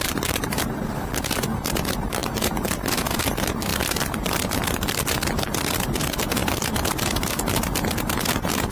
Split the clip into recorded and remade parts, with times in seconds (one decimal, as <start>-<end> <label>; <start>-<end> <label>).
0.0-8.7 remade